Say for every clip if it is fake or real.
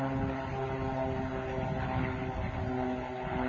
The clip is real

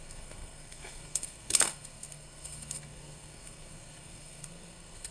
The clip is fake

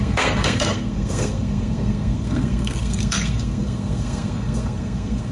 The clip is fake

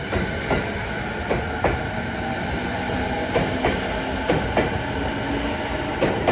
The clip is real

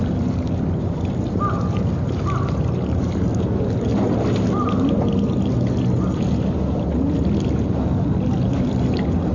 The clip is real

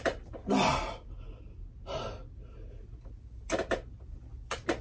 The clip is real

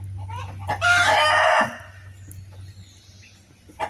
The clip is real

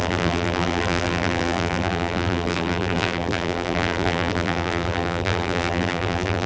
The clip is fake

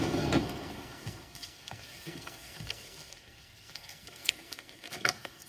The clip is fake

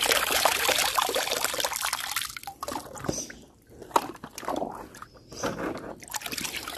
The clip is fake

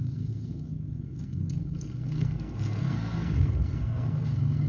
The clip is fake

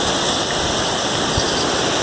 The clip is real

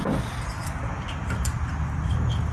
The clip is real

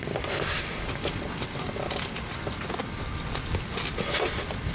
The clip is real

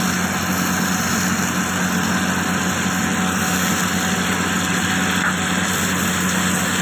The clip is real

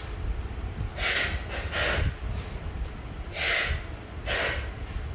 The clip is real